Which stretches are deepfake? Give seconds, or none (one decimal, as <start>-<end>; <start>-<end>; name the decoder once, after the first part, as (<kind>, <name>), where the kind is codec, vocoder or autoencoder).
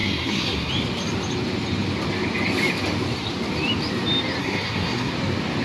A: 0.0-0.7 (codec, SNAC); 4.4-5.1